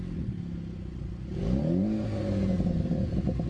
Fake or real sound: real